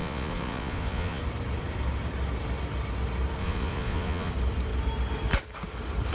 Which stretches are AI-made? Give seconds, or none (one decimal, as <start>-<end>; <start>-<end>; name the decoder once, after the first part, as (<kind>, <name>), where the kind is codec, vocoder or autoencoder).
0.0-1.2 (vocoder, Vocos); 3.4-4.3